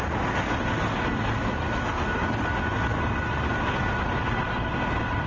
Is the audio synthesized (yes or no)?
no